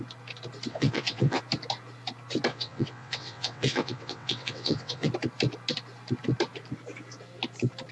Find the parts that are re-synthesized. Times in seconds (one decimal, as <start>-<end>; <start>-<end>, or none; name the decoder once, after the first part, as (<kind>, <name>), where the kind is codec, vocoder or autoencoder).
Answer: 0.7-1.4 (vocoder, WaveNeXt); 2.5-5.1